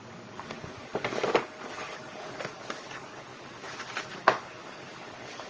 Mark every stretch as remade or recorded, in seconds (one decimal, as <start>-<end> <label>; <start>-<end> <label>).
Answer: 0.0-3.3 remade; 3.3-4.0 recorded; 4.0-5.5 remade

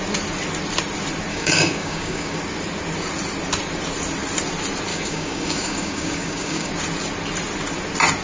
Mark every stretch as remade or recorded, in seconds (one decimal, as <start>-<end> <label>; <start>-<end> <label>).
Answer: 0.0-1.3 recorded; 1.3-2.4 remade; 2.4-4.9 recorded; 4.9-6.7 remade; 6.7-8.2 recorded

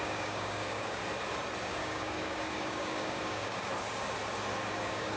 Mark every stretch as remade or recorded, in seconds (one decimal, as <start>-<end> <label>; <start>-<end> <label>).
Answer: 0.0-1.0 remade; 1.0-1.6 recorded; 1.6-3.7 remade; 3.7-4.8 recorded; 4.8-5.2 remade

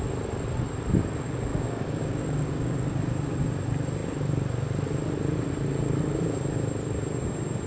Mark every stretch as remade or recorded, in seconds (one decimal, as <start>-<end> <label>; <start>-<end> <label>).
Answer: 0.0-1.5 recorded; 1.5-3.0 remade; 3.0-7.7 recorded

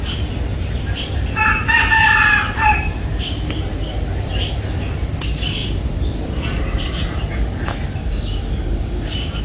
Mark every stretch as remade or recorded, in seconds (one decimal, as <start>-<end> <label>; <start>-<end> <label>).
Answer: 0.0-8.0 recorded; 8.0-9.4 remade

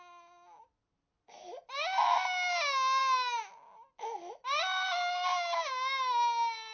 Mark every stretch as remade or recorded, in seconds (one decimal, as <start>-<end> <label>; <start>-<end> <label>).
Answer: 0.0-6.7 recorded

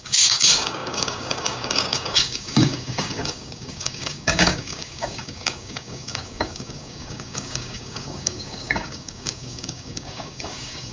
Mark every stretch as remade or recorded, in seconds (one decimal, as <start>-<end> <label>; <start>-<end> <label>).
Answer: 0.0-10.9 remade

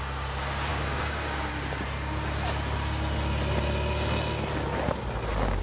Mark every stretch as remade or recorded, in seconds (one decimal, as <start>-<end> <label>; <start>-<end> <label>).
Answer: 0.0-0.7 recorded; 0.7-1.5 remade; 1.5-5.6 recorded